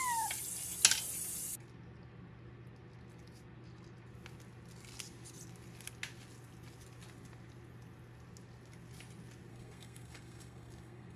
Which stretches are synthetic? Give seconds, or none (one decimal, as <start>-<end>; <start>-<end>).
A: 9.5-11.2